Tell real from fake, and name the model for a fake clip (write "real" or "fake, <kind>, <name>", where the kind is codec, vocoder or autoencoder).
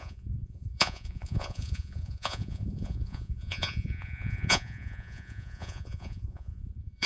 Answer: fake, vocoder, Vocos